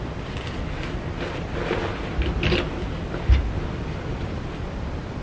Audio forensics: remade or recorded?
recorded